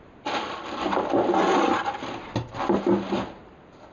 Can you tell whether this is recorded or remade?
recorded